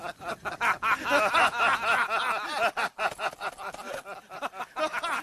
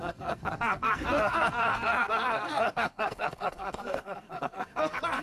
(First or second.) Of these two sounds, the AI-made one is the second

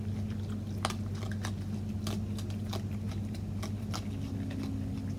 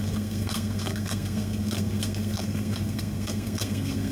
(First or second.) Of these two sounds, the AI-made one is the second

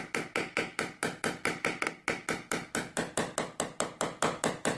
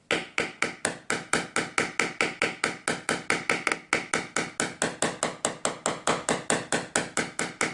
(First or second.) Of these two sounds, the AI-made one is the first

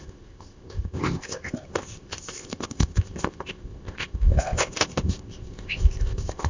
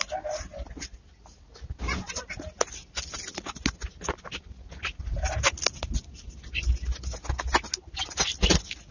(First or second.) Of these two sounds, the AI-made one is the first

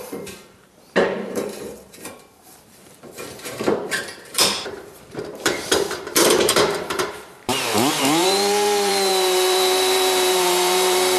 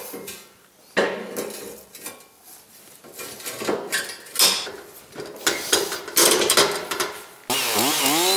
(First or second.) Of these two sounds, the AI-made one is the first